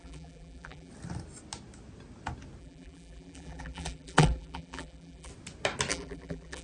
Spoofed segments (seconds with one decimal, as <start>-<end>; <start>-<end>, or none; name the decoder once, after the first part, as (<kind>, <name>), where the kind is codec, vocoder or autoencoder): 0.0-0.9 (vocoder, BigVGAN v2); 2.6-5.3; 5.9-6.6